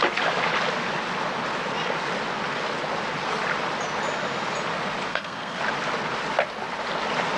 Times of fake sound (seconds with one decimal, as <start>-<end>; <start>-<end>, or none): 5.1-5.6